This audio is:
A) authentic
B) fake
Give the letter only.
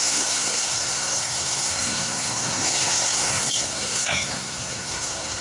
B